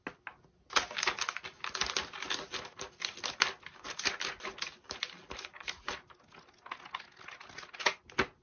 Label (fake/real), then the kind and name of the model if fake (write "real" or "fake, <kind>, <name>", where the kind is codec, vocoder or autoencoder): real